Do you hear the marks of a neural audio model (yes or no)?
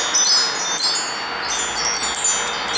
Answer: no